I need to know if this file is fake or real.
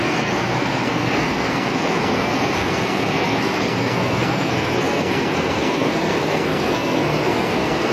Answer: fake